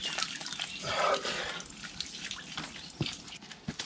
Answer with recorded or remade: recorded